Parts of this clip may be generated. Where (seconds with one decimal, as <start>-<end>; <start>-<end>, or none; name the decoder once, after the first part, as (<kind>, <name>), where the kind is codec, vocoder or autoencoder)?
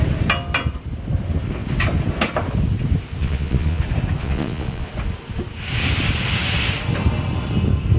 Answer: 3.2-3.8 (vocoder, Vocos); 4.2-4.9